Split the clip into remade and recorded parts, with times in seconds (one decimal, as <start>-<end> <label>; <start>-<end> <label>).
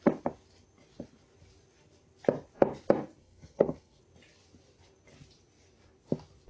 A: 0.0-3.2 recorded; 3.2-4.0 remade; 4.0-6.5 recorded